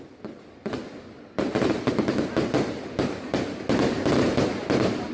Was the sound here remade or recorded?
recorded